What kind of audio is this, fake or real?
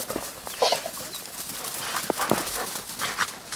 real